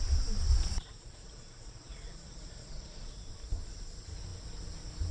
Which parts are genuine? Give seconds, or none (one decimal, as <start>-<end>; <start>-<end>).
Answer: 0.0-0.5; 3.1-5.1